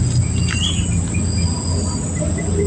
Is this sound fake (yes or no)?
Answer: no